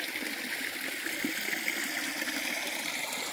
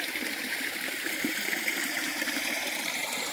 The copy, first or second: second